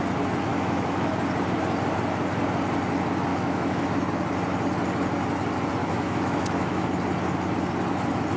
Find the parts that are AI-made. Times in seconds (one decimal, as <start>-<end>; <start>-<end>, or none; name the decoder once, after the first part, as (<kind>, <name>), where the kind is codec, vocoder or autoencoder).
0.5-1.1 (autoencoder, DAC-VAE); 3.3-3.9; 5.8-6.9